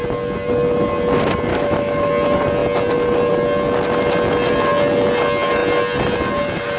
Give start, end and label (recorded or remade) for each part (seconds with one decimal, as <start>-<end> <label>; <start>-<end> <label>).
0.0-1.5 recorded; 1.5-2.1 remade; 2.1-6.8 recorded